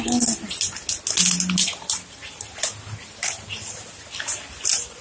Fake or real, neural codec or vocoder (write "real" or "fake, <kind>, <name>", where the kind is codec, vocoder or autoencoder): real